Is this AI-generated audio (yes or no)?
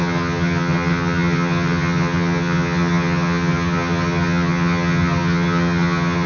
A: yes